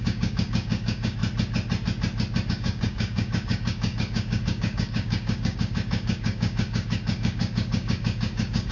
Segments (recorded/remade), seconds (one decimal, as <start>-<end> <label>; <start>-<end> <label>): 0.0-1.2 remade; 1.2-2.5 recorded; 2.5-8.7 remade